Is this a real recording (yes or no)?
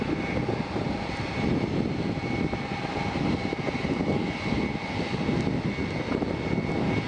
yes